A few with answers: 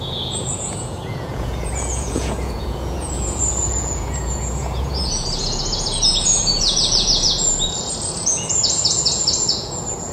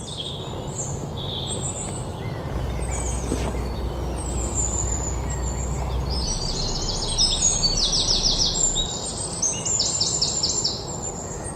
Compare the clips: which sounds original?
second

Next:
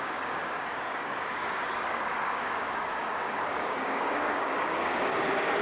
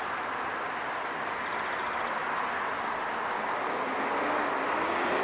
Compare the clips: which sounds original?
second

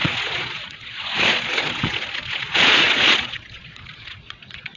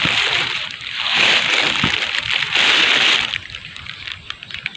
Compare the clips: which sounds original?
second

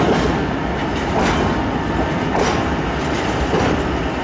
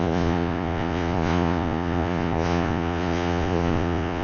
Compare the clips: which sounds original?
first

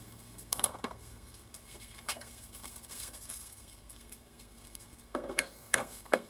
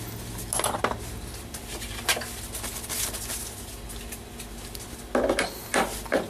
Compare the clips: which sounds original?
second